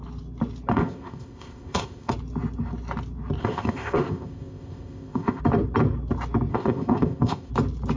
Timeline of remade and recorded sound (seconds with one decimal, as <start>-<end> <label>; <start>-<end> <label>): 0.0-0.7 recorded; 0.7-2.1 remade; 2.1-3.4 recorded; 3.4-5.4 remade; 5.4-6.5 recorded; 6.5-7.5 remade; 7.5-8.0 recorded